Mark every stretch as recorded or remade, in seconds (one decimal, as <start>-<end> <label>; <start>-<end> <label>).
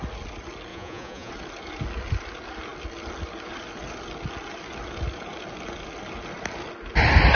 0.0-0.7 recorded; 0.7-1.3 remade; 1.3-7.3 recorded